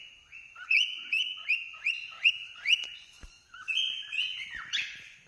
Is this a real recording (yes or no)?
no